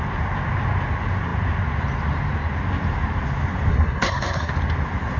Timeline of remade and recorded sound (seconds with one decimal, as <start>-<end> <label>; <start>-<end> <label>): 0.0-3.7 recorded; 3.7-4.5 remade; 4.5-5.2 recorded